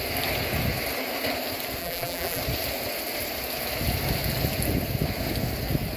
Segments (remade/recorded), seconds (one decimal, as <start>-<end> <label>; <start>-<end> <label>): 0.0-1.8 recorded; 1.8-2.4 remade; 2.4-6.0 recorded

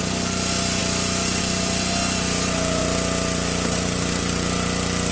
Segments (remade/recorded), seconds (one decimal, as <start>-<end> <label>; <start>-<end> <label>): 0.0-5.1 recorded

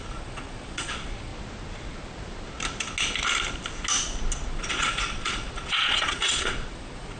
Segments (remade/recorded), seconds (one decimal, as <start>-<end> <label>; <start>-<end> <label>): 0.0-1.3 remade; 1.3-4.5 recorded; 4.5-7.2 remade

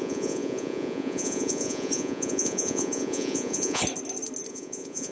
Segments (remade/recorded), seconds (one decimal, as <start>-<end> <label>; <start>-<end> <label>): 0.0-3.8 remade; 3.8-4.5 recorded; 4.5-5.1 remade

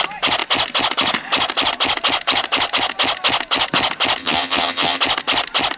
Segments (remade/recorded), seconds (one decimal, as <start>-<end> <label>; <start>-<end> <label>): 0.0-4.2 recorded; 4.2-5.0 remade; 5.0-5.8 recorded